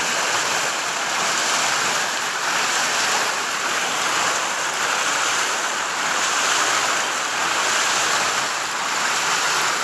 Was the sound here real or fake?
real